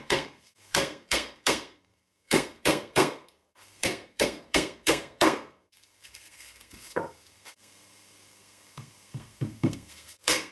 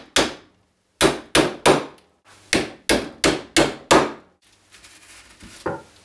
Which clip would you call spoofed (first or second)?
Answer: first